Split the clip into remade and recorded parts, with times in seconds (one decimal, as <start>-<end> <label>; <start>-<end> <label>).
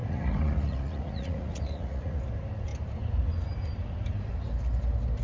0.0-2.2 remade; 2.2-5.2 recorded